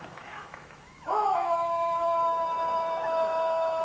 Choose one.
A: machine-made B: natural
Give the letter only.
A